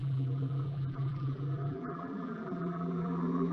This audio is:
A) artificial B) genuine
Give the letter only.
A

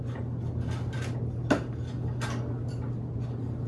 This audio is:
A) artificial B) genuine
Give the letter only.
B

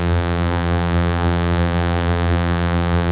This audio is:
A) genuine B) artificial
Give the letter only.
B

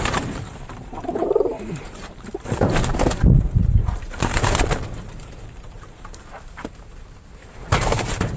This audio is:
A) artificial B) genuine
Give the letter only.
A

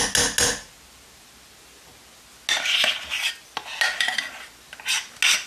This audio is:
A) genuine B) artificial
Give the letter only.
A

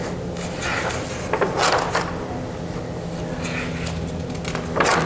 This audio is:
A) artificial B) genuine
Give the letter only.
B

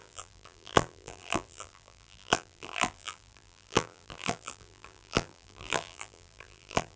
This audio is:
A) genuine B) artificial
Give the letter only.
B